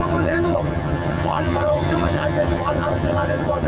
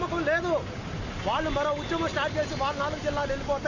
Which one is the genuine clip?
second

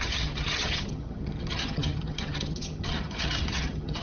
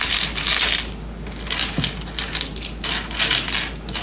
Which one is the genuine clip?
second